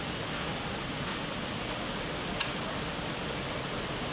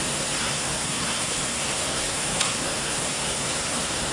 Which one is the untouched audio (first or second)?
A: first